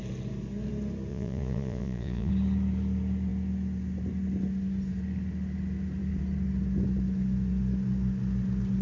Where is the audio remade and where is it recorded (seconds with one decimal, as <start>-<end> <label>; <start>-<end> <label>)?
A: 0.0-1.1 recorded; 1.1-2.3 remade; 2.3-8.8 recorded